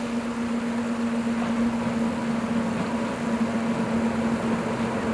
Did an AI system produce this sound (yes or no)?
no